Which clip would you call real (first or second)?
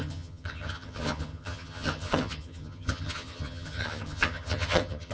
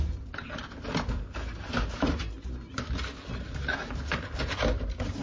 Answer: second